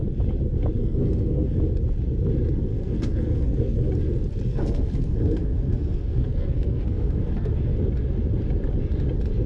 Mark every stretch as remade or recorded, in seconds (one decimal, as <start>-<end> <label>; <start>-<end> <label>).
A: 0.0-0.8 recorded; 0.8-1.6 remade; 1.6-2.7 recorded; 2.7-3.9 remade; 3.9-4.5 recorded; 4.5-7.5 remade; 7.5-9.5 recorded